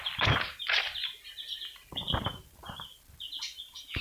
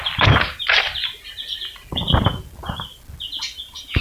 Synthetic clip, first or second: first